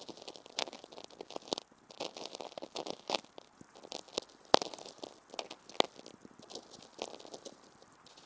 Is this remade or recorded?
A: recorded